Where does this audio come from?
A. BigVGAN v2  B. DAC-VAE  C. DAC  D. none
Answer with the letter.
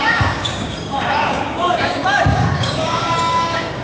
C